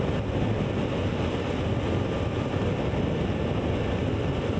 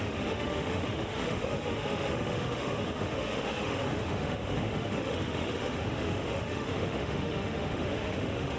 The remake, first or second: second